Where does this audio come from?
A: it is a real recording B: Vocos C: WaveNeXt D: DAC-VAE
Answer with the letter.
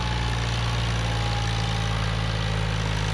A